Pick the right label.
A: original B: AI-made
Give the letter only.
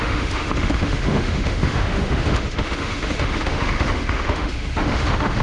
B